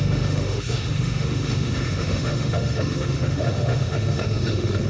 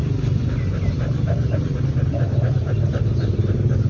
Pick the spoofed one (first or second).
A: first